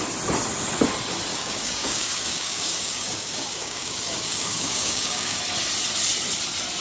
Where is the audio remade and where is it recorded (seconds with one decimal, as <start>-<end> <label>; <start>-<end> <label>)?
0.0-1.3 recorded; 1.3-5.4 remade; 5.4-6.8 recorded